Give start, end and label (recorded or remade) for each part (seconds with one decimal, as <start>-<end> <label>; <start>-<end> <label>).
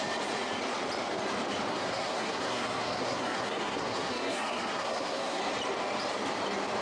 0.0-1.7 recorded; 1.7-5.4 remade; 5.4-6.8 recorded